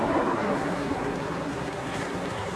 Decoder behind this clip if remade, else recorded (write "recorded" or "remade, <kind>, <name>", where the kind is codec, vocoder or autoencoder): remade, codec, SNAC